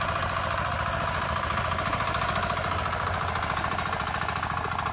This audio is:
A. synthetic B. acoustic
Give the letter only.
B